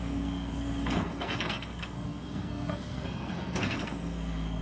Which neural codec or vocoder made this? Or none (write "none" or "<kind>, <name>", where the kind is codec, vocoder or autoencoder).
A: codec, SNAC